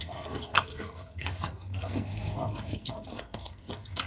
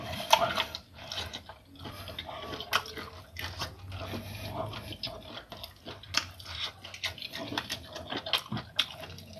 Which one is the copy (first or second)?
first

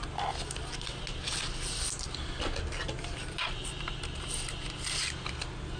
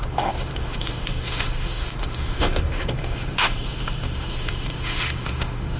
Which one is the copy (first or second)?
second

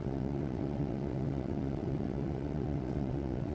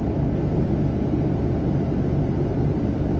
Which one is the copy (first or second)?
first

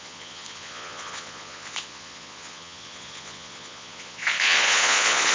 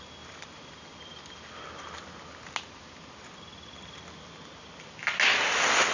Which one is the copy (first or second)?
first